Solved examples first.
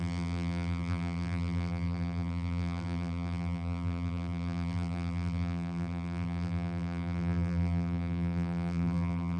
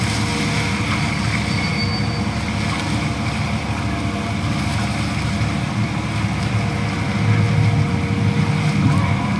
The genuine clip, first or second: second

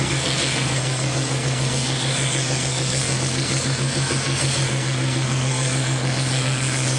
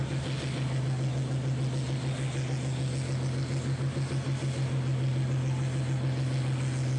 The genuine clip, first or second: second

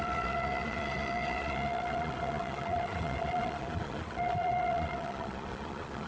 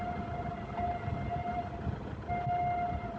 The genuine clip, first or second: second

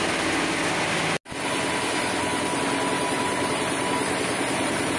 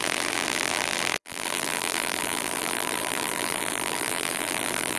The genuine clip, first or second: first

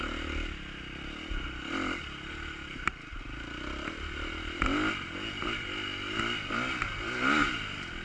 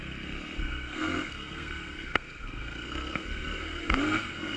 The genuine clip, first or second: first